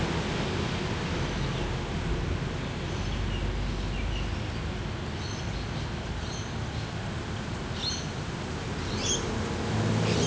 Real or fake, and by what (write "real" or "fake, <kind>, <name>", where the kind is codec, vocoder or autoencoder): real